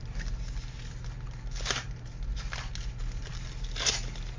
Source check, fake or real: real